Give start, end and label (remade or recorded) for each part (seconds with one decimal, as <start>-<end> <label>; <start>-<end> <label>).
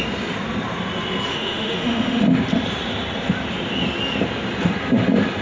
0.0-1.3 recorded; 1.3-2.2 remade; 2.2-5.4 recorded